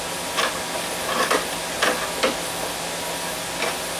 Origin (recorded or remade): recorded